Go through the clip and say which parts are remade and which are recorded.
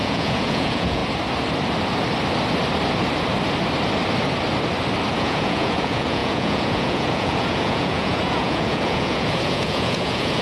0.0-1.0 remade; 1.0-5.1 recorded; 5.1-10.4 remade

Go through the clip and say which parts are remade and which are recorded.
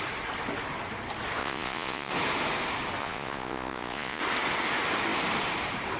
0.0-1.4 recorded; 1.4-2.1 remade; 2.1-3.0 recorded; 3.0-4.2 remade; 4.2-6.0 recorded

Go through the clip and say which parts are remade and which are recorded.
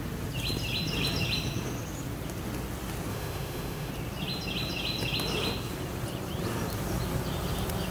0.0-3.1 recorded; 3.1-3.9 remade; 3.9-7.9 recorded